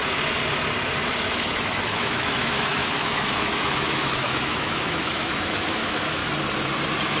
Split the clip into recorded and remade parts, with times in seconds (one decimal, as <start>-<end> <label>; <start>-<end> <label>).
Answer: 0.0-1.3 recorded; 1.3-6.2 remade; 6.2-7.2 recorded